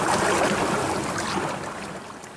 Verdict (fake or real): real